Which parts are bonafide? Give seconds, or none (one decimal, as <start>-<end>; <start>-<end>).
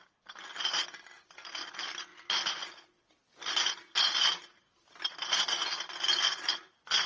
0.0-7.1